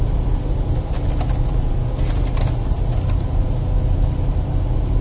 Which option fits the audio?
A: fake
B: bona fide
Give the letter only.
B